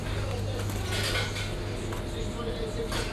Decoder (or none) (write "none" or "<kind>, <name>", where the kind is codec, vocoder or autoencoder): none